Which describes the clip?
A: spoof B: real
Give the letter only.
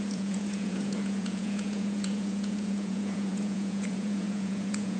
A